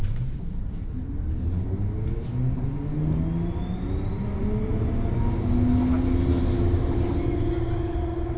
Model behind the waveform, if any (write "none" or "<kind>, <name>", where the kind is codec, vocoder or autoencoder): none